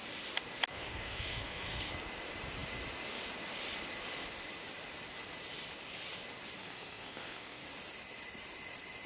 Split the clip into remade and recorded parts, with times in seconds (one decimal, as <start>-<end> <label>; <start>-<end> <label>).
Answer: 0.0-0.7 recorded; 0.7-1.9 remade; 1.9-6.6 recorded; 6.6-7.6 remade; 7.6-9.1 recorded